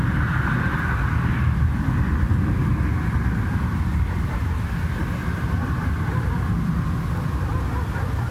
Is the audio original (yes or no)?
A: yes